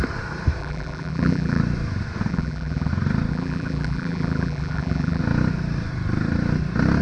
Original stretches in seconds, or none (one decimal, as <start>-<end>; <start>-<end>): 0.0-0.6; 1.6-2.3; 2.9-3.3; 5.2-7.0